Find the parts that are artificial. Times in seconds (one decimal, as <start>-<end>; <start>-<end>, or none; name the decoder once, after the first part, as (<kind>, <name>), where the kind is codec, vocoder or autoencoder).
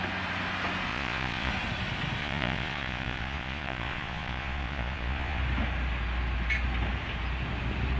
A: 0.9-1.5 (vocoder, Vocos); 2.2-5.4